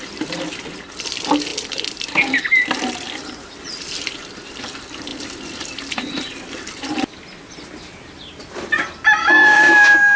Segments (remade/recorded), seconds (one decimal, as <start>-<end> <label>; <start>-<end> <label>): 0.0-9.2 recorded; 9.2-10.2 remade